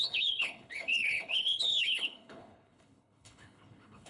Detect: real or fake fake